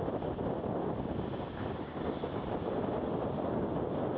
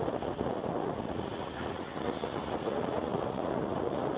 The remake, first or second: second